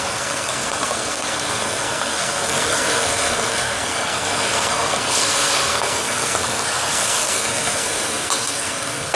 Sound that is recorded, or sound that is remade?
remade